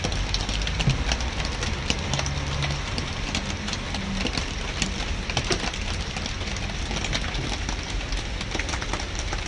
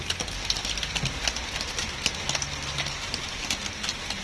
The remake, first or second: first